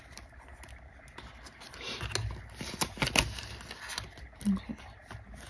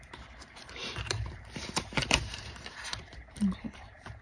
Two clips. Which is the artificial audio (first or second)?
second